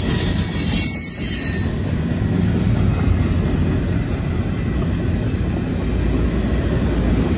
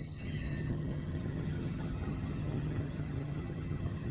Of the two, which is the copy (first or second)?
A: second